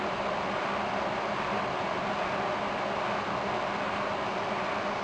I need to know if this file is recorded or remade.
recorded